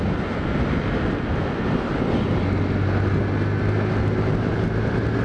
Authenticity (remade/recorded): recorded